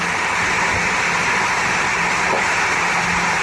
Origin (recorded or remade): recorded